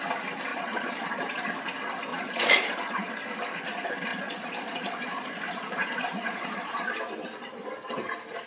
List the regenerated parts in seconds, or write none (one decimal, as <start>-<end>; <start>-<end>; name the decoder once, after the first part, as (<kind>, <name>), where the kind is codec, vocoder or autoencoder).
0.5-1.4 (vocoder, Vocos); 2.1-3.1; 4.1-6.9